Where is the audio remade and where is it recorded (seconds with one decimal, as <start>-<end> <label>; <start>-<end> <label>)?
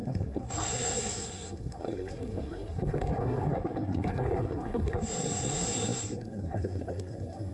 0.0-7.5 remade